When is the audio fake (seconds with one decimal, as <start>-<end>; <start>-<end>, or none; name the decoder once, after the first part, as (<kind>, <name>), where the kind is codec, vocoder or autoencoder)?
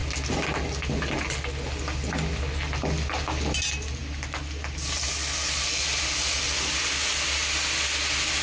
none